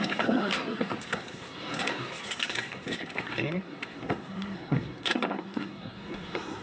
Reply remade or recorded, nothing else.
remade